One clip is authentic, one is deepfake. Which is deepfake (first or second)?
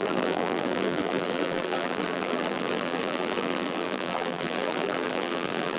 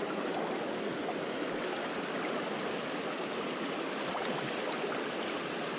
first